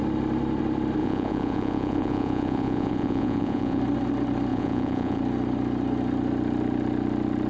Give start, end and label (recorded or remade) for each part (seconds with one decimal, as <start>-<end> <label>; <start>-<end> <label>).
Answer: 0.0-1.0 recorded; 1.0-3.8 remade; 3.8-4.5 recorded; 4.5-5.2 remade; 5.2-7.5 recorded